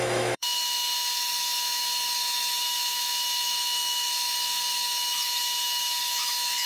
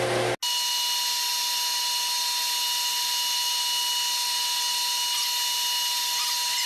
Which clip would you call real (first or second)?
second